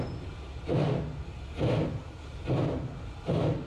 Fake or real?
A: real